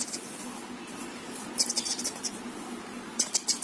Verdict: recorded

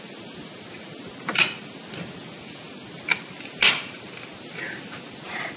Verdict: recorded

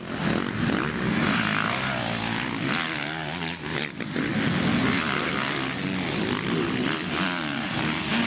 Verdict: recorded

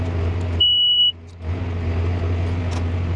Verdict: recorded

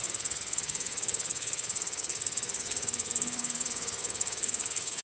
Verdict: remade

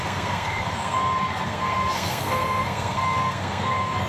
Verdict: remade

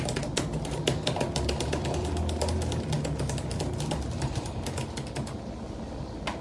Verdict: recorded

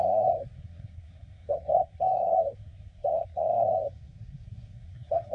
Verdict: remade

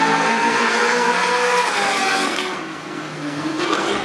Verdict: remade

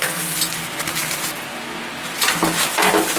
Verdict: recorded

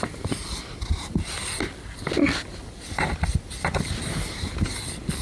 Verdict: recorded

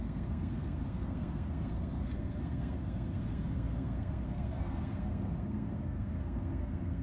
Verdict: remade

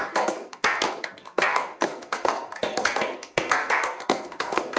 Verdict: remade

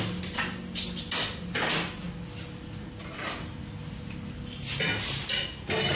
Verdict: recorded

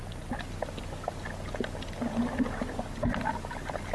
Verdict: recorded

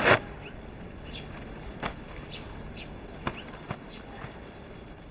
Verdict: recorded